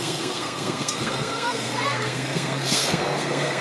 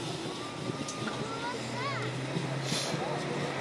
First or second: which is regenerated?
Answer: first